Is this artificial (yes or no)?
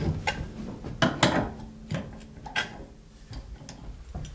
no